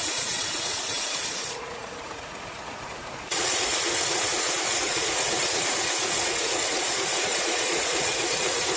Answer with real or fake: fake